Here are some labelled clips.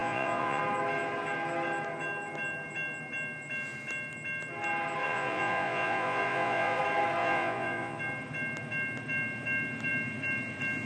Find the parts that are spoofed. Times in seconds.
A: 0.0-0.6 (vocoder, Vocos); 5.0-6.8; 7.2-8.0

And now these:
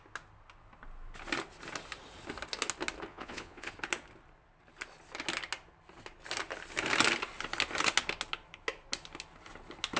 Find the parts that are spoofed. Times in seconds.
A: 3.1-3.7 (vocoder, Vocos)